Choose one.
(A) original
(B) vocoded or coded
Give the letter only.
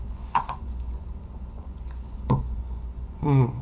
B